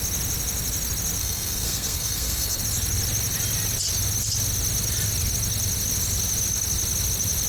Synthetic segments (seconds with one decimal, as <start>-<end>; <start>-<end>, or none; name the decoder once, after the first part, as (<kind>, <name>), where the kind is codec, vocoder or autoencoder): 1.2-2.6 (codec, SNAC)